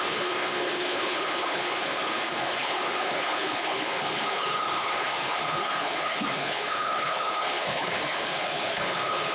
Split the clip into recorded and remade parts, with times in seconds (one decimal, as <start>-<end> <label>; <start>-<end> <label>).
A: 0.0-9.3 remade